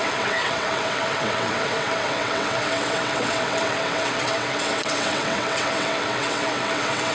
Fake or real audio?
fake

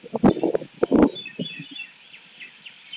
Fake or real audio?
real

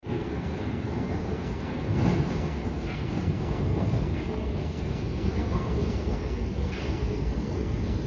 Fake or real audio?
fake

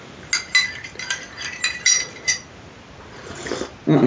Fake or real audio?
real